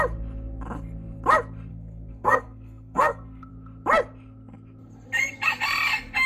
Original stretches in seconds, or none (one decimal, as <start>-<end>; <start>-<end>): 0.0-1.7; 3.5-6.3